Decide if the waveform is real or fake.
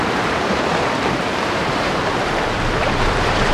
fake